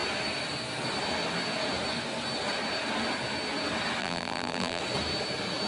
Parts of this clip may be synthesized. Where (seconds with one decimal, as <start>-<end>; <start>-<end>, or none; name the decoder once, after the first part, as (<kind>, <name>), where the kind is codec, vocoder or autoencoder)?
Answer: 4.0-4.8 (vocoder, BigVGAN v2)